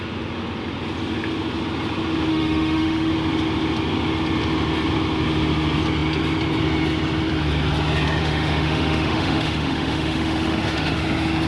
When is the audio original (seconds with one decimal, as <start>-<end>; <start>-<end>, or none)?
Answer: 0.0-2.3; 3.1-8.2; 11.0-11.5